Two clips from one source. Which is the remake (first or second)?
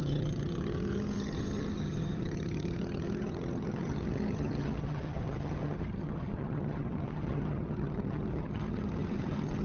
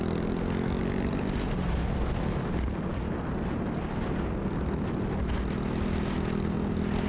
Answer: first